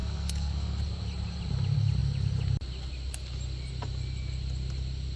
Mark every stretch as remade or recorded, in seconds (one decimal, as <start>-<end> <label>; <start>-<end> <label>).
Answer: 0.0-0.8 remade; 0.8-5.2 recorded